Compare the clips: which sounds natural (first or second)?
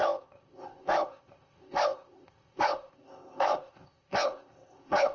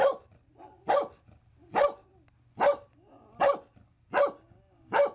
second